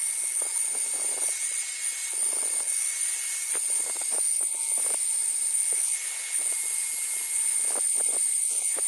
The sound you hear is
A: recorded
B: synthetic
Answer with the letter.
A